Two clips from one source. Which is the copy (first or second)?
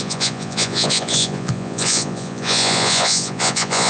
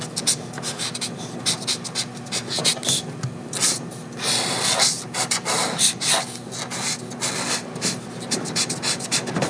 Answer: first